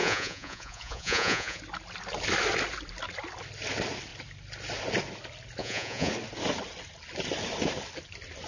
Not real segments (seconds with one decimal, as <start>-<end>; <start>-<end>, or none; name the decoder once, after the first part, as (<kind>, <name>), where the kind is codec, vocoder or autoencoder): 0.0-1.6 (vocoder, Vocos); 5.6-6.1